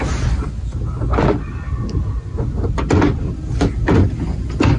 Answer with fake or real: real